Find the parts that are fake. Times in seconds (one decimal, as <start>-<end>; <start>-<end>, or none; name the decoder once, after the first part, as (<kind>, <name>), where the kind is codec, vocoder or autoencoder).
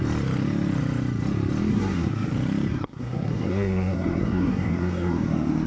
1.7-2.3 (codec, SNAC); 2.7-5.7